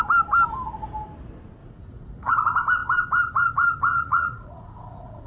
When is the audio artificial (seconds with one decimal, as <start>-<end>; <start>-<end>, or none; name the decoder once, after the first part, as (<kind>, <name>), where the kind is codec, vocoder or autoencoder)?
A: 1.6-2.3 (vocoder, Vocos); 3.9-5.3